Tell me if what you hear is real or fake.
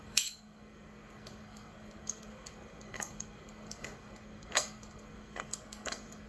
fake